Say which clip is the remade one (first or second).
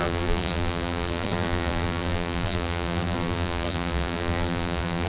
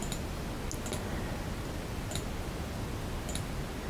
first